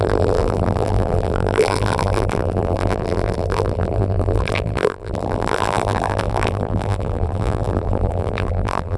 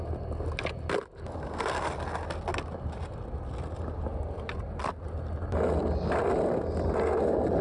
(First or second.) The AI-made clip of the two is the first